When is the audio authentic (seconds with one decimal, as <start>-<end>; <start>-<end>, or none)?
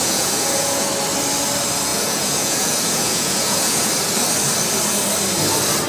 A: 0.9-1.9; 3.9-5.9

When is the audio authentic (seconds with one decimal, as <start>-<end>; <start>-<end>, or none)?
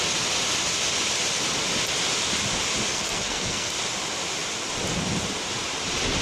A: 0.0-2.9; 3.8-6.2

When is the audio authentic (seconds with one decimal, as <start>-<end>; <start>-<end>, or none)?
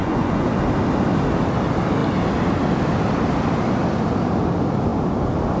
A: 0.5-5.6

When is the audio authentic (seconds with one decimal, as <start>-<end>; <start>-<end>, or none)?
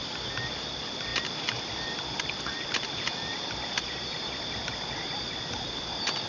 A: 0.0-6.3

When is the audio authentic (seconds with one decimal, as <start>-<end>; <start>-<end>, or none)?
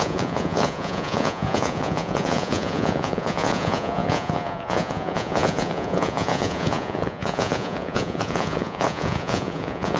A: none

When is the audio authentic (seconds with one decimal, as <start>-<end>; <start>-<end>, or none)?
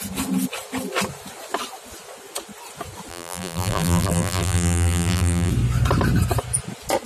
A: 0.0-3.1; 5.5-7.1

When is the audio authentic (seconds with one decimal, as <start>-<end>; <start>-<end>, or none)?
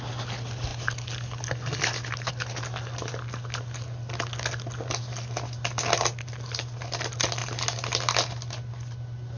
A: 0.0-9.4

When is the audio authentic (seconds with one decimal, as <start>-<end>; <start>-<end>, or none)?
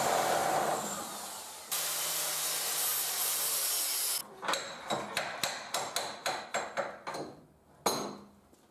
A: 0.0-0.4; 2.4-2.9; 3.5-8.7